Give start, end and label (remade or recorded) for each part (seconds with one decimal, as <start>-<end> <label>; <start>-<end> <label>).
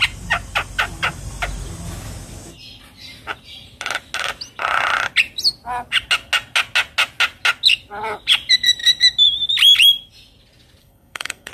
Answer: 0.0-10.8 recorded; 10.8-11.5 remade